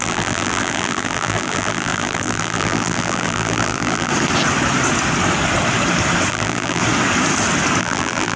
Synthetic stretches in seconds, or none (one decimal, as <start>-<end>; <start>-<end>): 0.0-4.1; 6.3-6.8; 7.8-8.4